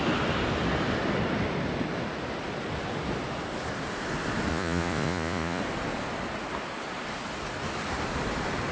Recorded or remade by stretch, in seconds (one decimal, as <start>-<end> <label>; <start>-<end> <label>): 0.0-4.5 recorded; 4.5-5.6 remade; 5.6-8.7 recorded